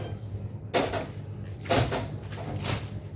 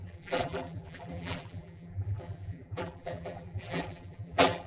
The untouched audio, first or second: first